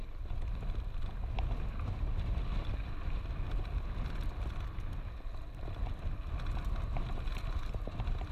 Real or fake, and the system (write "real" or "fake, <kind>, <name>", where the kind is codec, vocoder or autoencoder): real